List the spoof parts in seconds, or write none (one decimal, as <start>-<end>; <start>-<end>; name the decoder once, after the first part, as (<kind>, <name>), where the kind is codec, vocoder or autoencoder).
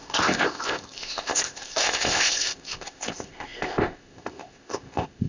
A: 0.0-5.3 (codec, ZipCodec)